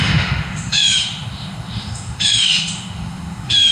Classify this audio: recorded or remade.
remade